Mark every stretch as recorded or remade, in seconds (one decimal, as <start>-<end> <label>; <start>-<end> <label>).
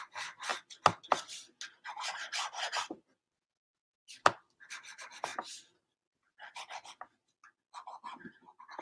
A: 0.0-0.5 remade; 0.5-4.2 recorded; 4.2-5.3 remade; 5.3-8.8 recorded